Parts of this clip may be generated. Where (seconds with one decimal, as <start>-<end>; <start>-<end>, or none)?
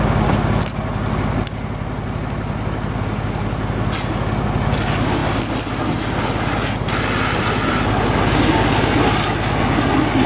none